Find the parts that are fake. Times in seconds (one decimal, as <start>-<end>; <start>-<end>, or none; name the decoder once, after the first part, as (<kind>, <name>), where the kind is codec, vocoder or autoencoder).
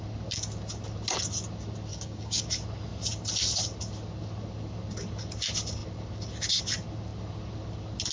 1.9-2.4 (codec, DAC)